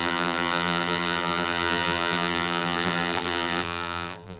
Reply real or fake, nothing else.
fake